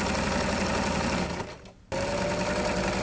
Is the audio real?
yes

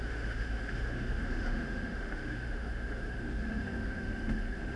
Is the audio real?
no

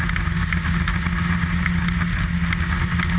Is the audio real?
yes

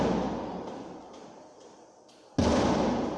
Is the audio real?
yes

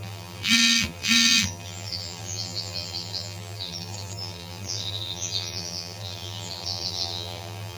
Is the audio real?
no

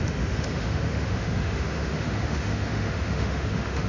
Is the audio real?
no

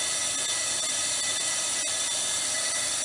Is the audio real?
yes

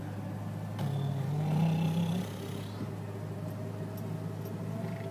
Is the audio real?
yes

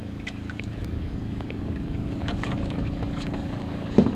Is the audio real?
no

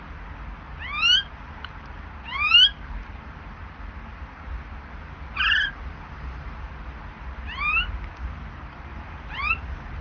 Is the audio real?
yes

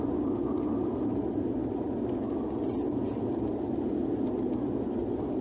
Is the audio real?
yes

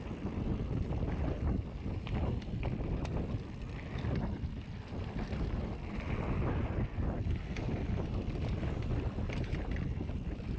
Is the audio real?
yes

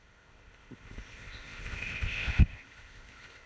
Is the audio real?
no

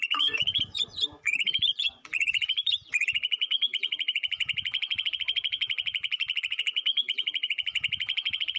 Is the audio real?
no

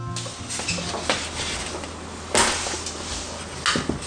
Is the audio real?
yes